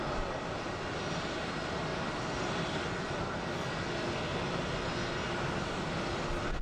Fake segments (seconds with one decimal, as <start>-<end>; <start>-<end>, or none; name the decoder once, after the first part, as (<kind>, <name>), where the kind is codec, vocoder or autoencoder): none